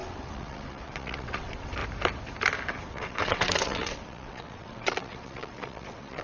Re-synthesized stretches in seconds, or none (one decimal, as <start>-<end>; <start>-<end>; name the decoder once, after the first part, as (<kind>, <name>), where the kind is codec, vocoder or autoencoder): 0.0-1.8 (vocoder, WaveNeXt); 2.9-6.2